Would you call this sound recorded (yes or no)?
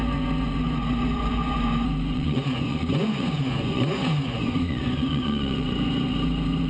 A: no